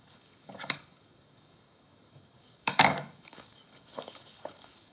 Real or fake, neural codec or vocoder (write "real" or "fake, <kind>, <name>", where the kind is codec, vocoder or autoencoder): fake, codec, DAC